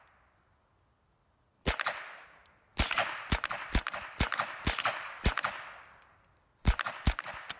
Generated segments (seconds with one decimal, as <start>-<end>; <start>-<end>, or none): 2.7-6.9